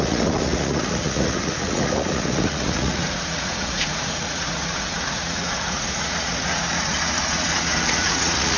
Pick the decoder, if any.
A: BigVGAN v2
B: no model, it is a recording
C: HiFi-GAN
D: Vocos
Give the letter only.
D